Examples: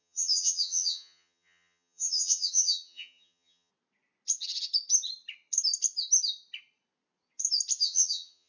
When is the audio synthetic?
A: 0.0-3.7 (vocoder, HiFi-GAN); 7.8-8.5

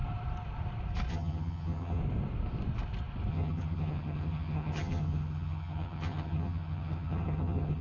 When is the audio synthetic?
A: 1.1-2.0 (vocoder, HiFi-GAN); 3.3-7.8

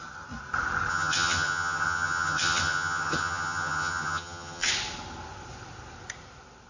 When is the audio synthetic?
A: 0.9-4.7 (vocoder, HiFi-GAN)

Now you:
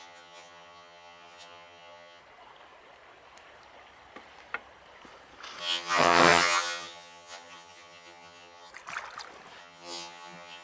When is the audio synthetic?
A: 0.0-2.2 (vocoder, HiFi-GAN); 5.6-8.7; 9.6-10.6